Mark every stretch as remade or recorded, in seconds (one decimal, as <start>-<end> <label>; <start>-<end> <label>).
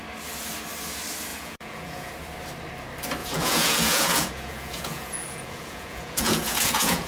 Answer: 0.0-1.3 recorded; 1.3-2.1 remade; 2.1-3.2 recorded; 3.2-7.1 remade